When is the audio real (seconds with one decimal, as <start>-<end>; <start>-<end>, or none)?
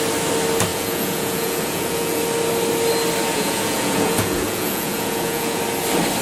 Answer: 0.0-0.7; 2.2-3.3; 5.6-6.2